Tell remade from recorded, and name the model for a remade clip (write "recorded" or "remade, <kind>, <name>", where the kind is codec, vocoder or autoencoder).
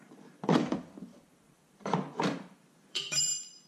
remade, vocoder, BigVGAN v2